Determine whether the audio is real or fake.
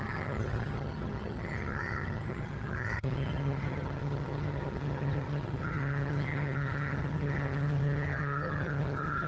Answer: fake